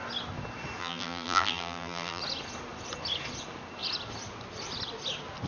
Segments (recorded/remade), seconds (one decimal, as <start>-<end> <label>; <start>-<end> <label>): 0.0-0.8 recorded; 0.8-2.2 remade; 2.2-5.5 recorded